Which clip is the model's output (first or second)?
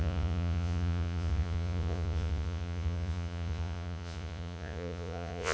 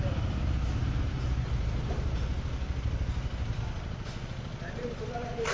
first